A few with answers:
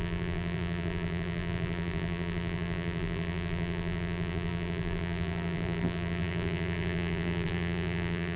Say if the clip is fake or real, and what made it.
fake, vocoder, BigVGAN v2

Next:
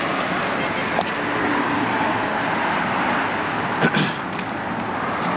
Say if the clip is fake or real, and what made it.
real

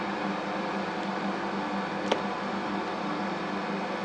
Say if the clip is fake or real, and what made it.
real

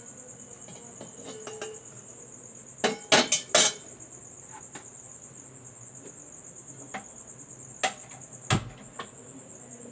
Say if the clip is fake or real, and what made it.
real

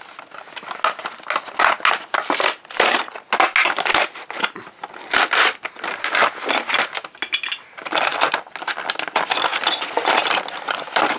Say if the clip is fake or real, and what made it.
real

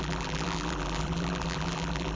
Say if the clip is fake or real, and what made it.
fake, vocoder, BigVGAN v2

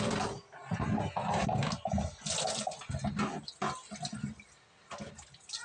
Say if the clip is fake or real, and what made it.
real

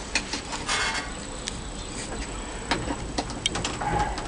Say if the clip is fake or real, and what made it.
real